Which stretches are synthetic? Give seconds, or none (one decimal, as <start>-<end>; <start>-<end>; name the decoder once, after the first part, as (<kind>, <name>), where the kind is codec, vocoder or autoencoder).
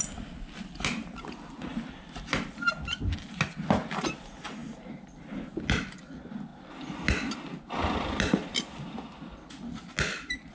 none